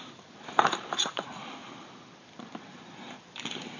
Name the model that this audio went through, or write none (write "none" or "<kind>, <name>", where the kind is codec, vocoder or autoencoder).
vocoder, BigVGAN v2